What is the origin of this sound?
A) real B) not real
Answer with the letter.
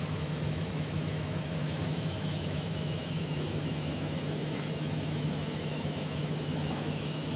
B